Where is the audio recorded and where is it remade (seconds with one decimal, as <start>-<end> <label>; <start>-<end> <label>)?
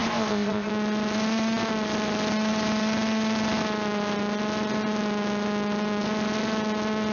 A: 0.0-0.7 remade; 0.7-7.1 recorded